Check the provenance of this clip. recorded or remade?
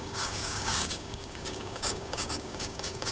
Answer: remade